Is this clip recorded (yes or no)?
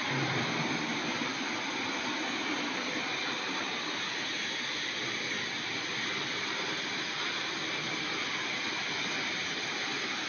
yes